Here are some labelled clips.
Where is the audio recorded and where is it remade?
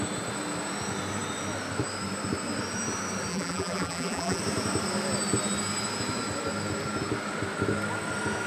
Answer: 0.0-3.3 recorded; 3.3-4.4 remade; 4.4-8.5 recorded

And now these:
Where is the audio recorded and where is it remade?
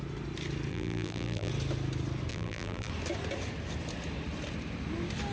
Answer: 0.0-0.7 recorded; 0.7-1.5 remade; 1.5-2.3 recorded; 2.3-2.9 remade; 2.9-5.3 recorded